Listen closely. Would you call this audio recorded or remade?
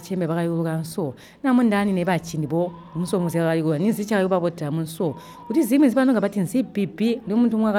recorded